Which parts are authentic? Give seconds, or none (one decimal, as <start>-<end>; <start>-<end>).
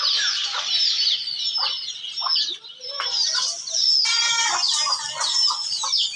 0.0-6.2